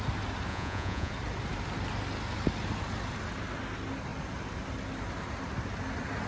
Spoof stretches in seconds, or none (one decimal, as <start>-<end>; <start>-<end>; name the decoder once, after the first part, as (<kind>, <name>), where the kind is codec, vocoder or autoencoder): 0.5-1.1 (vocoder, Vocos)